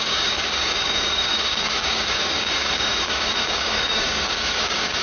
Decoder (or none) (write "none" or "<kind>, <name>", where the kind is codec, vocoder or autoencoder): codec, DAC